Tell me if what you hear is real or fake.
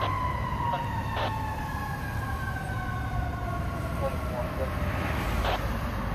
real